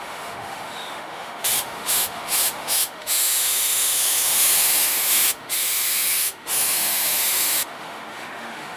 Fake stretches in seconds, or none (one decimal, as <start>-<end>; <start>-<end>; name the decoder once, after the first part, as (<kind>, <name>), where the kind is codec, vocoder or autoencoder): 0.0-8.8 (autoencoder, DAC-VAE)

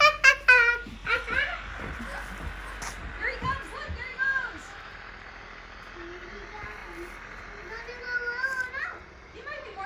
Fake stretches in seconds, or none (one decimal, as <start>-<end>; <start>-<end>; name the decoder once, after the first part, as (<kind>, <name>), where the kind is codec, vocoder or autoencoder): 4.2-4.9 (autoencoder, DAC-VAE)

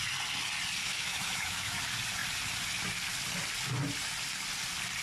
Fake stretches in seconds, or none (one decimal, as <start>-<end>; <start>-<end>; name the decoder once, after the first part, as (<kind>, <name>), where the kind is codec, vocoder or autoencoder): 0.8-1.8 (autoencoder, DAC-VAE)

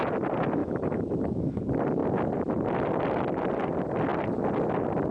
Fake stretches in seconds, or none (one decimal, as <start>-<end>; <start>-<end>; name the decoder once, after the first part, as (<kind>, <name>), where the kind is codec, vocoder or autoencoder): 0.6-1.6 (autoencoder, DAC-VAE)

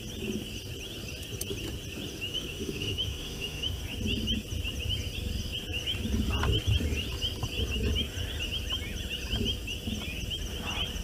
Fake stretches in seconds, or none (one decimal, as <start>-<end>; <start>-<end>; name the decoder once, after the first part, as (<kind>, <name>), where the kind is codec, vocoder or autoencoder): 2.3-3.8 (autoencoder, DAC-VAE)

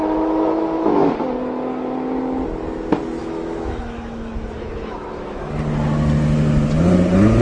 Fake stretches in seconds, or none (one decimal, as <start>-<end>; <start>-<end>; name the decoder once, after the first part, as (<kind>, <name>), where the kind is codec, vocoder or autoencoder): 0.0-1.1 (autoencoder, DAC-VAE); 3.2-5.6

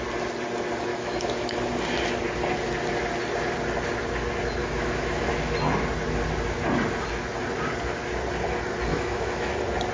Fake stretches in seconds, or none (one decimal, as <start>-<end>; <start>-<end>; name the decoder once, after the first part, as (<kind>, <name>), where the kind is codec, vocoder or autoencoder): 0.9-1.7 (autoencoder, DAC-VAE); 4.6-5.3; 8.9-9.5

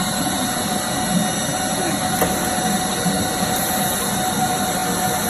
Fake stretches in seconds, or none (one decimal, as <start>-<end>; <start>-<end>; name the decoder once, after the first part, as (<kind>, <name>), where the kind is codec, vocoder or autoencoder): none